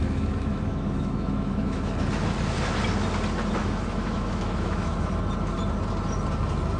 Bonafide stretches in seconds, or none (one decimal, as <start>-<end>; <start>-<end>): 1.9-3.6; 5.1-6.8